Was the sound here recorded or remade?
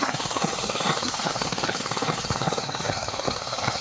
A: remade